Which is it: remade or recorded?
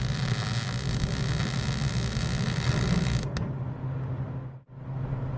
recorded